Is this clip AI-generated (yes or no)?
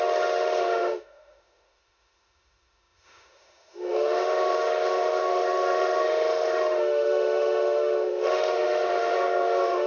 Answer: yes